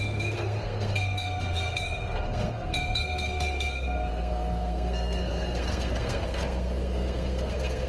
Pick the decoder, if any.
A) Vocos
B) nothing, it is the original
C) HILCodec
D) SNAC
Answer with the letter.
D